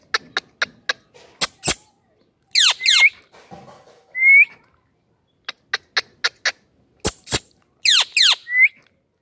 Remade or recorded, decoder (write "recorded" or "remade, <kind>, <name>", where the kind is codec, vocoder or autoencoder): recorded